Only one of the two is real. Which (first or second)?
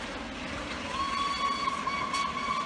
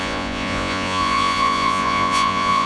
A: first